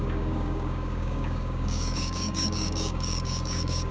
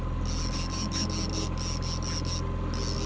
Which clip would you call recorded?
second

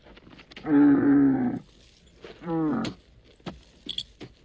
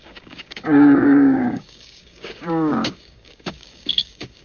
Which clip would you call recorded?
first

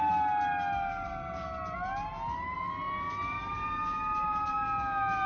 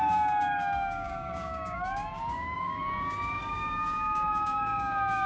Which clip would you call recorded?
first